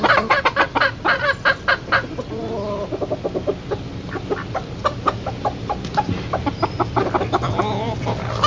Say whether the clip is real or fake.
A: real